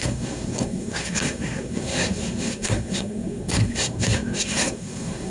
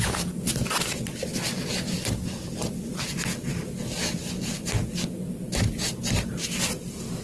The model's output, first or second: first